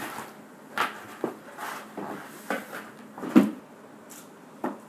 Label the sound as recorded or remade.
recorded